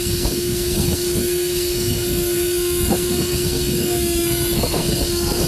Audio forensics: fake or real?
fake